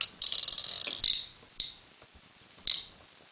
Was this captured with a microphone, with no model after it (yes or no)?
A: yes